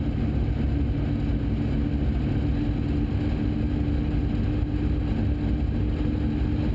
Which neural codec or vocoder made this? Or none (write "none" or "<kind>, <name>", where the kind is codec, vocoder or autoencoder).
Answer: none